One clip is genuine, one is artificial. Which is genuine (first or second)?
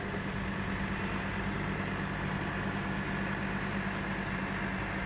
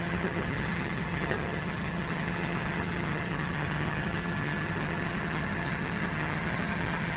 first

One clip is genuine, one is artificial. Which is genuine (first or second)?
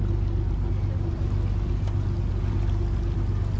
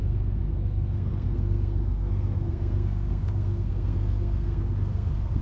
first